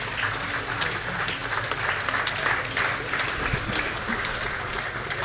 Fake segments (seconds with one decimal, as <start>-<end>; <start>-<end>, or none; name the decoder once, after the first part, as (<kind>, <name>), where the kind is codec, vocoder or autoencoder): none